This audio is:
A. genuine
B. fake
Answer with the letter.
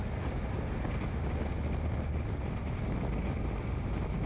A